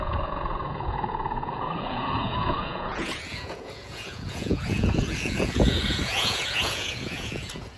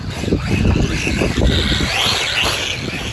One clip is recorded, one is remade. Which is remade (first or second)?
first